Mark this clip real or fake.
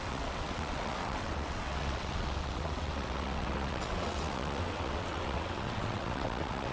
fake